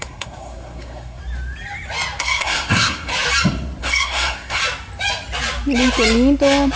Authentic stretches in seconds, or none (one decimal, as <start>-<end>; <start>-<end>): 1.2-2.2; 3.1-3.8; 4.6-6.8